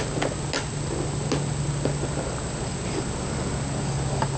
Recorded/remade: recorded